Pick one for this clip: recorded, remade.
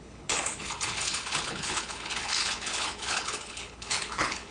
remade